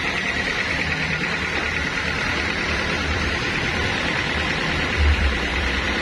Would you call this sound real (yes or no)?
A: no